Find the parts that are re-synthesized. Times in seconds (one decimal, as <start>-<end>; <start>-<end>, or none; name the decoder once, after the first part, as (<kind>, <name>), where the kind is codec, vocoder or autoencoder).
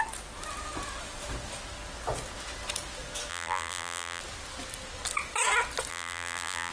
3.3-4.2 (vocoder, BigVGAN v2); 5.9-6.7